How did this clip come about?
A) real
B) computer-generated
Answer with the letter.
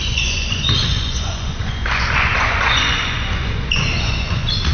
B